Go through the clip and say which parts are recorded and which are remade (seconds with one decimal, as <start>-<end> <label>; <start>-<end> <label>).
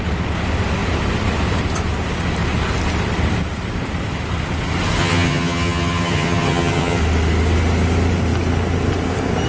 0.0-5.0 recorded; 5.0-7.0 remade; 7.0-9.5 recorded